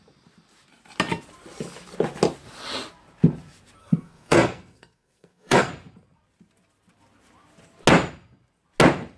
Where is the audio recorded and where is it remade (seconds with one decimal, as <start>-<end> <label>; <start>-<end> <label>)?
0.0-3.8 recorded; 3.8-5.7 remade; 5.7-9.2 recorded